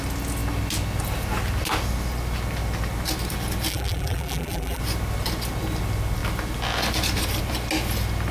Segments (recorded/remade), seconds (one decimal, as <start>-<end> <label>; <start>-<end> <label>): 0.0-3.7 recorded; 3.7-4.8 remade; 4.8-8.3 recorded